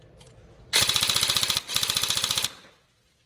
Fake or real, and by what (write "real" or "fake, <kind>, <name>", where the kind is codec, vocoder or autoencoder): real